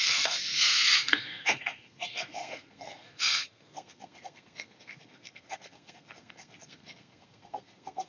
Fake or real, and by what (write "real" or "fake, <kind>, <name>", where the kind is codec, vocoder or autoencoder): fake, codec, SNAC